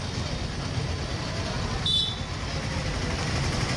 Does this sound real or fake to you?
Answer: real